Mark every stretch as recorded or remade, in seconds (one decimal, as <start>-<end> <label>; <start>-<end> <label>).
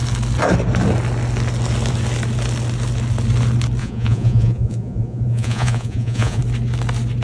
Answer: 0.0-3.8 recorded; 3.8-6.4 remade; 6.4-7.2 recorded